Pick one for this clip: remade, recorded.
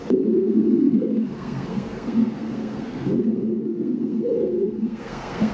remade